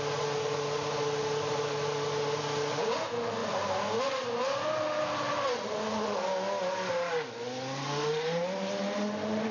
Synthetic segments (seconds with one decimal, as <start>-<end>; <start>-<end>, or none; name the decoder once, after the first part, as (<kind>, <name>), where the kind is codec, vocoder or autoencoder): none